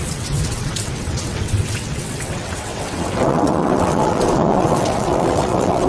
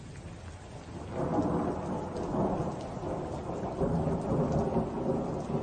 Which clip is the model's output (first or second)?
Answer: first